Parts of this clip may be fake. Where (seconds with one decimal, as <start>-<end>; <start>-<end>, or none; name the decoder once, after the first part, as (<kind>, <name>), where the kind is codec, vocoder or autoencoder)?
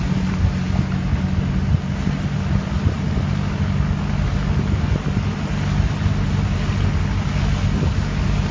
none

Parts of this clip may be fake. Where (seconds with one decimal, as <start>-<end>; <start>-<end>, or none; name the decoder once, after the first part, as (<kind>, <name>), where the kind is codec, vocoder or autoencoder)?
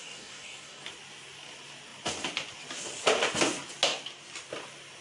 0.0-0.8 (codec, DAC)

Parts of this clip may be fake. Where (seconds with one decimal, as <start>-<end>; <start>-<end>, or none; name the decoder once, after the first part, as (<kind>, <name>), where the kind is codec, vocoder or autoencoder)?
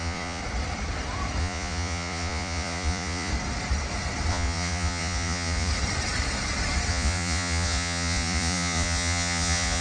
0.0-0.4 (vocoder, Vocos); 1.4-3.3; 4.3-5.7; 6.9-9.8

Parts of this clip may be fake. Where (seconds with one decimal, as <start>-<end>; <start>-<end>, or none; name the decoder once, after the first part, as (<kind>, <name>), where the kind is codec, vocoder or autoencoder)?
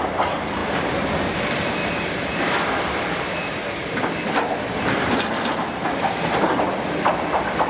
none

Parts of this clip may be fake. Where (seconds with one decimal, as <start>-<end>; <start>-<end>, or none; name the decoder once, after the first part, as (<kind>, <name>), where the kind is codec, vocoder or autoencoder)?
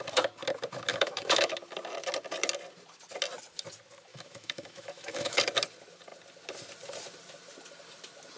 0.9-1.5 (autoencoder, DAC-VAE); 4.1-5.4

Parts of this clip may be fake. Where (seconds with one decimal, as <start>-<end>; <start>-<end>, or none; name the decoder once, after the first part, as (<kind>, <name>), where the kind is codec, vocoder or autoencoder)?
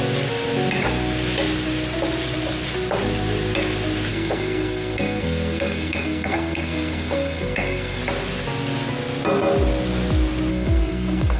4.1-8.0 (codec, SNAC); 10.5-11.4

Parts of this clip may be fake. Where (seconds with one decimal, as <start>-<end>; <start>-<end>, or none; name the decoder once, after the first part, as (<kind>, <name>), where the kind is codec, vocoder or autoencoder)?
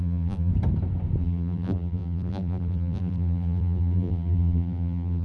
0.0-0.5 (vocoder, BigVGAN v2); 1.2-5.2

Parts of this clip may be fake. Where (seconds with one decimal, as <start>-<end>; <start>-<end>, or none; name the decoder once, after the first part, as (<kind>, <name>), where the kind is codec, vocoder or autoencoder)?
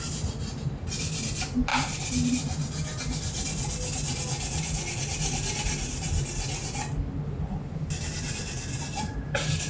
none